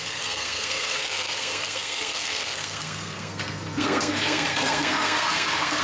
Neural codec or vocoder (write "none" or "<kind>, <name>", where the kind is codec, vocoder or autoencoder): codec, SNAC